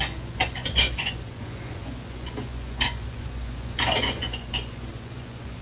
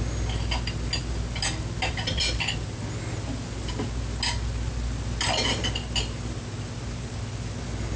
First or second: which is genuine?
second